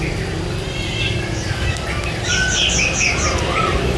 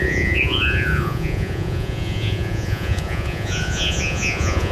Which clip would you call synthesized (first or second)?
second